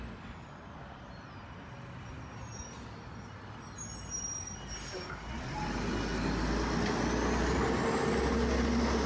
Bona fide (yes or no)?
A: yes